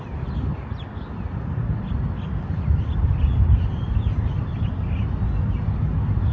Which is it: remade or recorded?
recorded